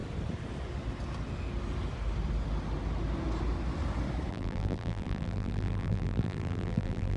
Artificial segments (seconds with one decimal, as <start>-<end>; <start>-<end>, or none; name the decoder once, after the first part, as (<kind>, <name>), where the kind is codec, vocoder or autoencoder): 4.3-7.2 (vocoder, BigVGAN v2)